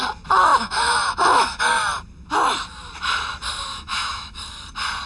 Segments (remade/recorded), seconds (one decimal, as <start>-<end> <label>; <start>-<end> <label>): 0.0-0.5 recorded; 0.5-1.6 remade; 1.6-3.7 recorded; 3.7-4.4 remade; 4.4-5.1 recorded